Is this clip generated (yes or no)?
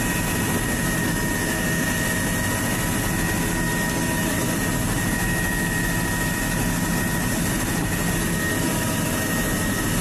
no